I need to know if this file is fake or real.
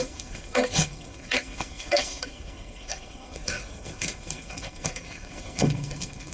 fake